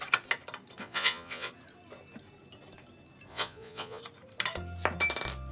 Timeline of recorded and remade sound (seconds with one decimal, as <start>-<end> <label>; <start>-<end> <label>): 0.0-0.8 recorded; 0.8-1.5 remade; 1.5-3.3 recorded; 3.3-4.0 remade; 4.0-5.5 recorded